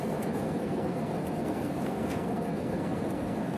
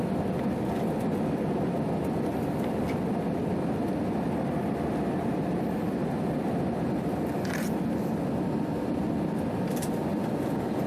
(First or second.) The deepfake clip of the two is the first